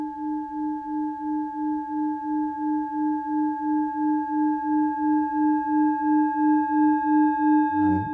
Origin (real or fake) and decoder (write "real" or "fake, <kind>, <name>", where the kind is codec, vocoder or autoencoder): real